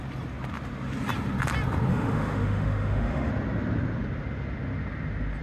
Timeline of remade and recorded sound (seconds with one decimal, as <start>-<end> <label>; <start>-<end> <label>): 0.0-1.9 recorded; 1.9-3.3 remade; 3.3-5.4 recorded